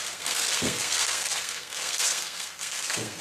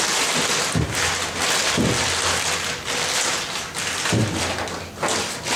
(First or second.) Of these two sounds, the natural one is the second